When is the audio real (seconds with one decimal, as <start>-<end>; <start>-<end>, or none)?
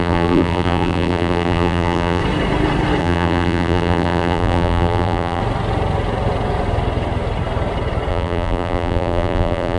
2.2-3.0; 5.4-8.1